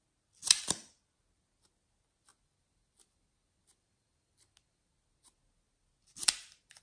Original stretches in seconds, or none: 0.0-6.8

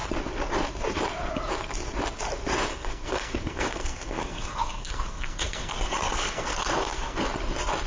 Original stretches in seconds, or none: 0.0-2.7; 7.2-7.9

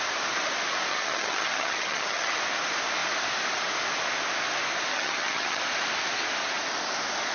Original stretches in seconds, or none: 0.0-0.9; 2.4-4.9; 5.6-7.3

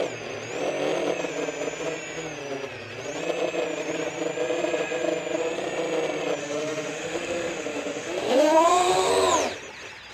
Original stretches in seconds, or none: 0.0-6.4; 9.1-10.1

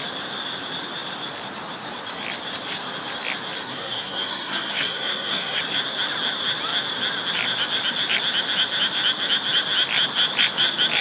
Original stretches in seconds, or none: 0.0-3.6; 5.6-11.0